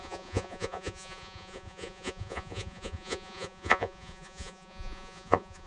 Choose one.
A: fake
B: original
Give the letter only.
A